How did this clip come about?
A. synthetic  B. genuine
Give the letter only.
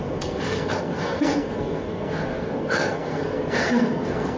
A